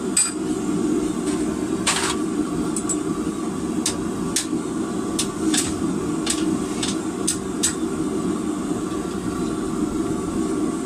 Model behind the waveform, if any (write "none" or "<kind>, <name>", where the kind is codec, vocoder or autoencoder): none